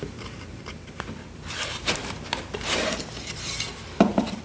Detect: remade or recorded recorded